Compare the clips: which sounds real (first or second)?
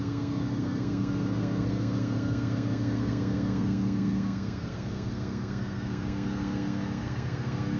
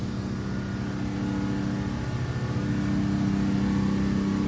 second